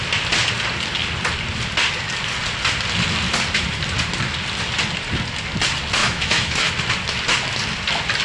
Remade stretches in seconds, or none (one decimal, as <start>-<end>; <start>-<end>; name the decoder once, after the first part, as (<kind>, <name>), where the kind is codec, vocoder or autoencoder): 6.0-6.7 (autoencoder, DAC-VAE)